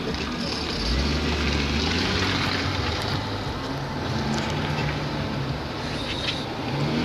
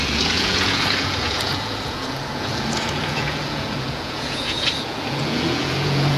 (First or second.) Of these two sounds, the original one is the first